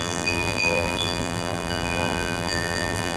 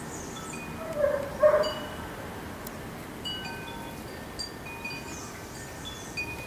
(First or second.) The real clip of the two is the second